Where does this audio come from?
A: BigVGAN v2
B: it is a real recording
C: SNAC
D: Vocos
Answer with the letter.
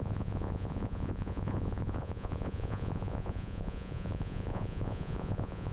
D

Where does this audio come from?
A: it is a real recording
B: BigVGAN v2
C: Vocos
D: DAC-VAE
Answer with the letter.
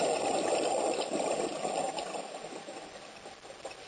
A